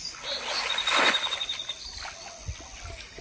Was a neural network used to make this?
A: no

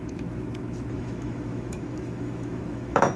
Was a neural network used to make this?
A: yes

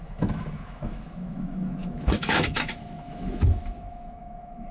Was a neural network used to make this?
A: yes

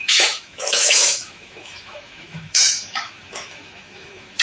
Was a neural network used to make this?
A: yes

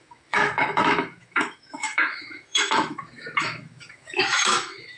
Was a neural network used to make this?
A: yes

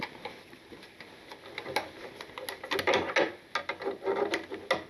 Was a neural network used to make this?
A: no